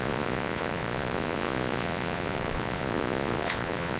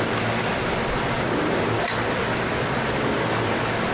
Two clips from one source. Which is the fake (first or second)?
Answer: first